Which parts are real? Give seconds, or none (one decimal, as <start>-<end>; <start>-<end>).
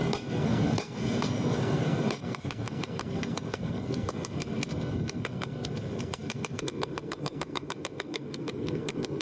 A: none